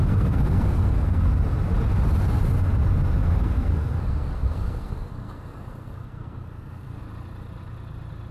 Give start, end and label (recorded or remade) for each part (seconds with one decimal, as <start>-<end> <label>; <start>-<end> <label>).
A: 0.0-1.3 remade; 1.3-3.2 recorded; 3.2-7.0 remade; 7.0-8.3 recorded